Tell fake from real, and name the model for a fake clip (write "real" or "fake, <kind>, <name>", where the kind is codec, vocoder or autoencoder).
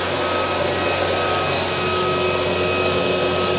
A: real